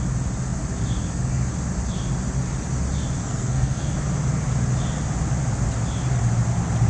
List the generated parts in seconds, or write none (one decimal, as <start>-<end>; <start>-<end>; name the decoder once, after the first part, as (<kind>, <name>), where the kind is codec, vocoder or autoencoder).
3.2-3.9 (codec, SNAC)